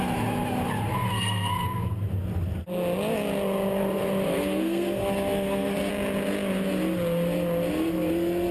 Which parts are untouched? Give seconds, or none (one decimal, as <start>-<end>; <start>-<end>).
0.0-0.9; 2.0-4.3; 5.9-8.5